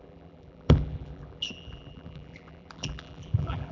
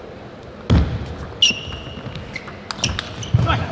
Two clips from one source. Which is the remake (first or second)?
first